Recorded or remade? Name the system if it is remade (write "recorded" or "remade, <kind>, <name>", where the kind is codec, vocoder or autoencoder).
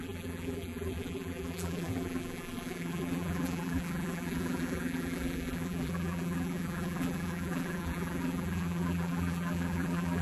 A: remade, vocoder, BigVGAN v2